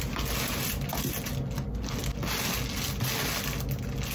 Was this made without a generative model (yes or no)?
yes